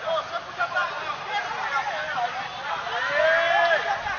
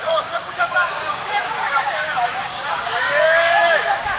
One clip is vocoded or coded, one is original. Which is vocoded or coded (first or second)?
second